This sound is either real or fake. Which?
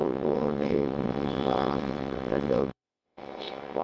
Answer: fake